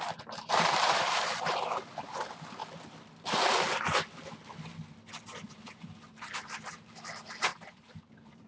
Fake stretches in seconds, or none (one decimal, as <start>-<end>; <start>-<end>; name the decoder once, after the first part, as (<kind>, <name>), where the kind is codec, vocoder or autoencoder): 0.0-2.6 (vocoder, BigVGAN v2); 5.5-8.5